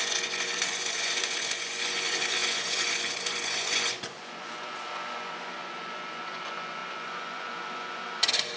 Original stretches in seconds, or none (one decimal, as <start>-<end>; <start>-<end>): none